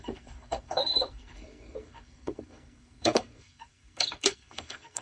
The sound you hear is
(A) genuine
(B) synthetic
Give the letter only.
B